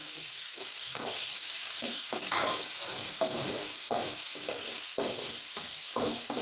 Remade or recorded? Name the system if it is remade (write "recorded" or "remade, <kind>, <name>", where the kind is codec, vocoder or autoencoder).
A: remade, codec, DAC